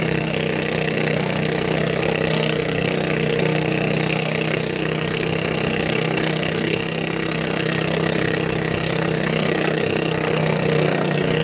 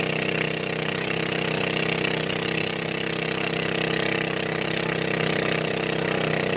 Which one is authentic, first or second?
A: second